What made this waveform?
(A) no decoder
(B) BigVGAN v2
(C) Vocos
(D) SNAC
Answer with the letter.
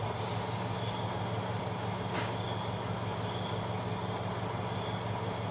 A